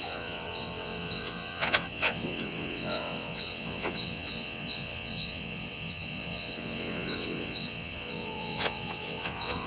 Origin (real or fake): fake